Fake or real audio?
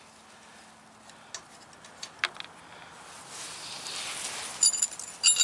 real